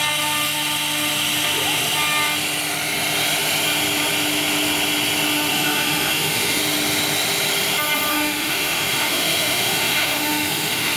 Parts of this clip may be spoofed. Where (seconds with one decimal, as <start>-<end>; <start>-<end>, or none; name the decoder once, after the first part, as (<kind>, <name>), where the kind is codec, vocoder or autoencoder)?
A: 5.5-6.6 (autoencoder, DAC-VAE); 8.1-11.0